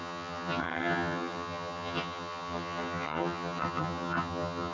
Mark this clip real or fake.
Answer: fake